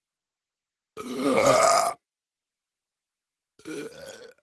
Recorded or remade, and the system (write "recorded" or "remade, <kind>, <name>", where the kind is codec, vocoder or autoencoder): recorded